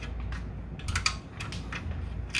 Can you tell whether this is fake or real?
real